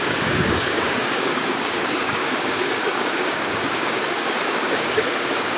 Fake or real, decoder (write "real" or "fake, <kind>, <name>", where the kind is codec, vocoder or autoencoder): fake, codec, DAC